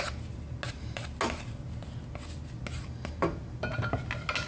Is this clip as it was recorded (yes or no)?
yes